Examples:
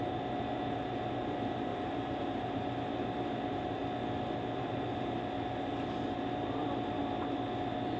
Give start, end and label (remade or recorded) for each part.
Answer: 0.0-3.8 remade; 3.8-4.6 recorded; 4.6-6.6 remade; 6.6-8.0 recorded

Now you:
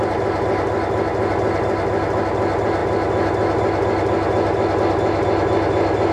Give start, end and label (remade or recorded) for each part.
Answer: 0.0-6.1 recorded

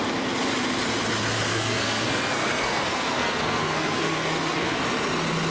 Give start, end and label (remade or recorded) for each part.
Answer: 0.0-1.5 recorded; 1.5-4.8 remade; 4.8-5.5 recorded